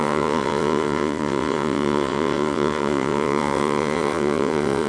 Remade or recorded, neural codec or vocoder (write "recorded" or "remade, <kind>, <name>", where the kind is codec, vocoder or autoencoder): remade, vocoder, WaveNeXt